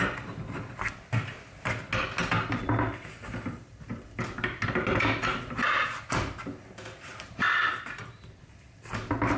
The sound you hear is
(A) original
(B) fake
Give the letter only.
A